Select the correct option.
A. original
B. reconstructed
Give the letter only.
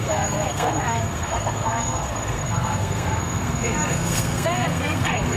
B